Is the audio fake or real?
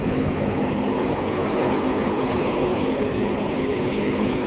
fake